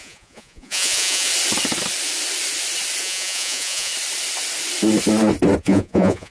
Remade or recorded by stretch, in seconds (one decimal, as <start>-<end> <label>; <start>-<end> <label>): 0.0-1.3 remade; 1.3-3.0 recorded; 3.0-3.9 remade; 3.9-5.6 recorded; 5.6-6.3 remade